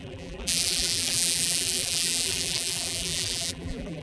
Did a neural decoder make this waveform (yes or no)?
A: yes